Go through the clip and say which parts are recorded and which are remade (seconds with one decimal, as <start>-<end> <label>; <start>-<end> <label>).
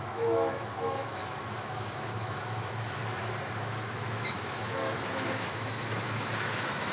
0.0-3.0 remade; 3.0-3.6 recorded; 3.6-6.9 remade